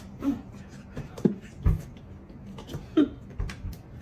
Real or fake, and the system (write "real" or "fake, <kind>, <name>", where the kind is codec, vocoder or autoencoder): real